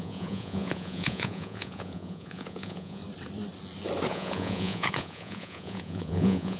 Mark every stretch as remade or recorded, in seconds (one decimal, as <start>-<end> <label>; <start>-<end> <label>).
0.0-3.0 remade; 3.0-4.1 recorded; 4.1-6.6 remade